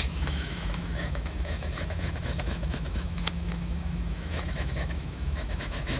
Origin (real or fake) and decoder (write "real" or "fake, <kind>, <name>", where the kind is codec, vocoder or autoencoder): fake, autoencoder, DAC-VAE